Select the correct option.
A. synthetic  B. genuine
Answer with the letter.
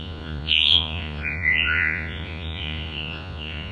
A